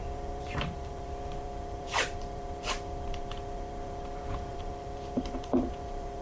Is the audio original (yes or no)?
no